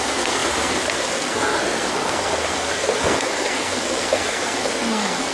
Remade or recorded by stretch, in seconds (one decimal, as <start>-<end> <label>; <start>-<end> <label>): 0.0-5.3 remade